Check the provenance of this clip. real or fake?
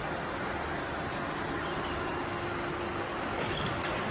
real